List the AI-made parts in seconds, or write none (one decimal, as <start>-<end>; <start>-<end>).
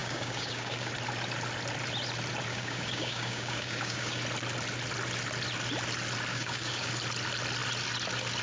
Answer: 0.0-0.9; 2.5-4.2; 6.3-6.9